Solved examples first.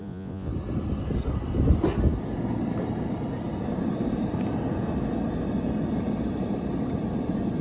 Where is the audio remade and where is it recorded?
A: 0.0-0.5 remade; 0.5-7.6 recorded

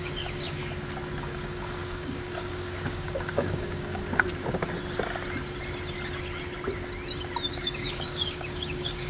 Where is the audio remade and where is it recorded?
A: 0.0-0.6 remade; 0.6-1.2 recorded; 1.2-4.0 remade; 4.0-7.5 recorded; 7.5-9.1 remade

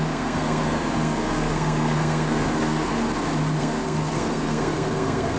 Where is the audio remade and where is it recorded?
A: 0.0-2.9 remade; 2.9-3.6 recorded; 3.6-5.4 remade

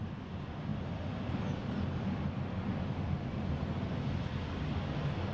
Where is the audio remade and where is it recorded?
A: 0.0-5.3 recorded

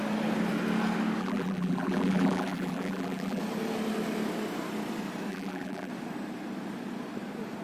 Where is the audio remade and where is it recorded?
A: 0.0-1.2 recorded; 1.2-3.4 remade; 3.4-5.3 recorded; 5.3-5.9 remade; 5.9-7.6 recorded

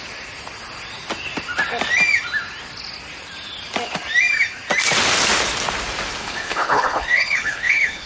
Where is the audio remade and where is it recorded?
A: 0.0-6.2 recorded; 6.2-8.1 remade

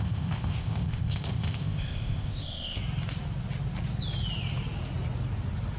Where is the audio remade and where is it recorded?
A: 0.0-2.8 remade; 2.8-5.8 recorded